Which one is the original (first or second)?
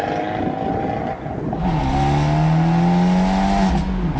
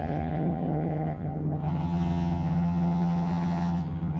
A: first